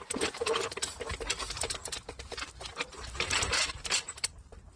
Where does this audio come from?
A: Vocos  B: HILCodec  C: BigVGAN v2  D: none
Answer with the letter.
C